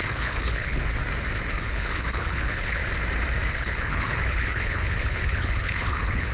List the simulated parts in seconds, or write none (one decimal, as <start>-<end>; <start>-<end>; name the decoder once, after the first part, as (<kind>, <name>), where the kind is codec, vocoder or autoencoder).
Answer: 0.0-0.8 (codec, HILCodec); 1.5-2.8; 3.5-6.3